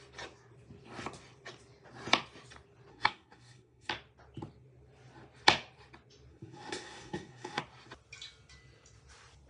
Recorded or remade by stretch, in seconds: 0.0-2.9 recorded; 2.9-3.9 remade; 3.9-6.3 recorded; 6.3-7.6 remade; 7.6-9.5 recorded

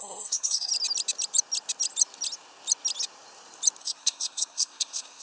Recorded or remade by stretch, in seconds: 0.0-0.7 remade; 0.7-3.8 recorded; 3.8-5.2 remade

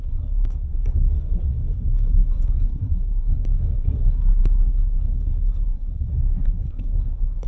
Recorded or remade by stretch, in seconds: 0.0-7.5 remade

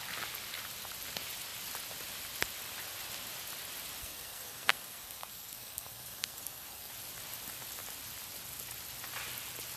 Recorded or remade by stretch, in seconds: 0.0-4.0 recorded; 4.0-6.9 remade; 6.9-9.8 recorded

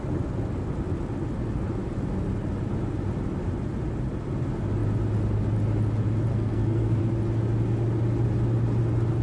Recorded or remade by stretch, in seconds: 0.0-6.3 recorded; 6.3-7.0 remade; 7.0-9.2 recorded

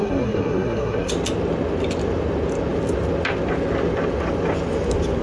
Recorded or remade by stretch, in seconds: 0.0-1.1 remade; 1.1-5.2 recorded

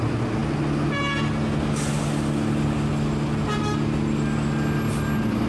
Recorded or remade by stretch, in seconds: 0.0-5.5 recorded

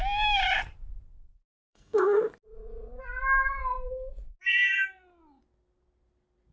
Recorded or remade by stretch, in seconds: 0.0-1.5 recorded; 1.5-2.2 remade; 2.2-6.5 recorded